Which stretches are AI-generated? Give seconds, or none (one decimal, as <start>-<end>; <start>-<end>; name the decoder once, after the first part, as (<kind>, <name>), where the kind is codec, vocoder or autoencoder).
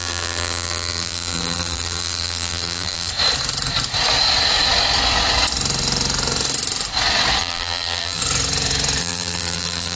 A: 0.0-3.1 (vocoder, BigVGAN v2); 7.4-8.2; 9.0-9.9